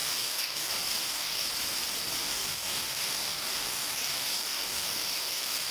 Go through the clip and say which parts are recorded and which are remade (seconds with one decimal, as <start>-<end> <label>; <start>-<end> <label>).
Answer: 0.0-1.5 remade; 1.5-2.2 recorded; 2.2-5.7 remade